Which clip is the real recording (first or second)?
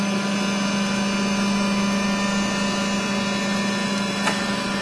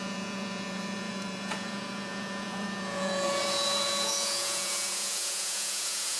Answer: first